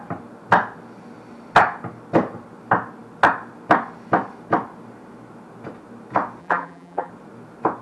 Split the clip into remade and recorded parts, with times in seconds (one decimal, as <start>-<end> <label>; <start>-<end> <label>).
0.0-6.4 recorded; 6.4-7.1 remade; 7.1-7.8 recorded